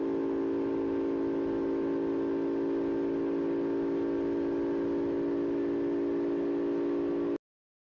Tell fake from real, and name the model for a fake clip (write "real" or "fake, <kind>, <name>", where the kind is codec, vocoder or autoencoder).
real